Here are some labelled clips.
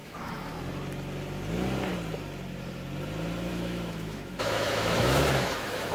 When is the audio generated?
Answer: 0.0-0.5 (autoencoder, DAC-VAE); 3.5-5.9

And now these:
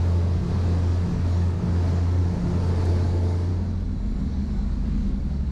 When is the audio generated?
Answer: 0.0-2.2 (codec, DAC); 2.9-3.5; 4.3-5.5

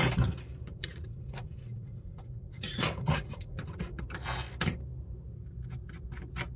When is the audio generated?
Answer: 0.6-4.0 (vocoder, Vocos)

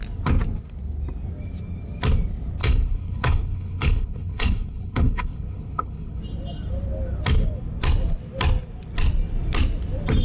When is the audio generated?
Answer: 2.6-6.2 (codec, HILCodec)